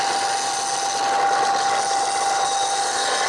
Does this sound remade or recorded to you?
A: recorded